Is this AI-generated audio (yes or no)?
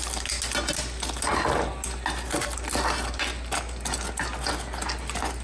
no